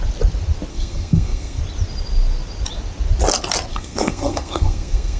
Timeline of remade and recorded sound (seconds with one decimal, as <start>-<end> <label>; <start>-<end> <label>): 0.0-0.7 recorded; 0.7-1.6 remade; 1.6-3.7 recorded; 3.7-5.2 remade